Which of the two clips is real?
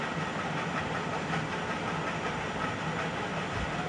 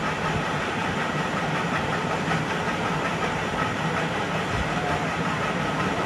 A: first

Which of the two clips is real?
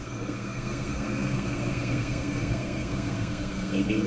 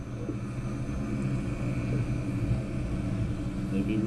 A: second